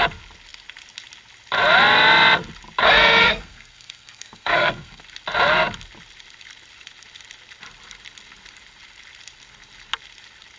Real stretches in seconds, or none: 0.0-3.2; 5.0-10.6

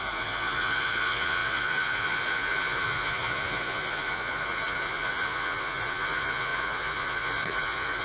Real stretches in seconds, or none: none

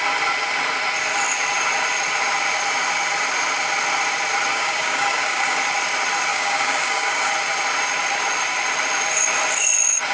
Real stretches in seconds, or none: 0.0-4.5; 5.6-6.3; 7.3-10.1